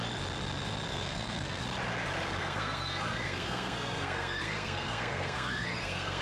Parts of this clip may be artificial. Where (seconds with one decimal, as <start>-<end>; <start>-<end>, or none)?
0.9-1.6; 2.4-6.2